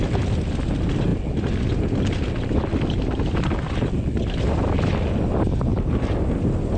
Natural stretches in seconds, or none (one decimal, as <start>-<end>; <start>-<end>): 0.0-6.8